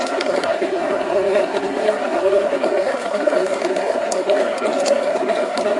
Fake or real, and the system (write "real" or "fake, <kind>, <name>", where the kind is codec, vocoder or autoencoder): fake, codec, SNAC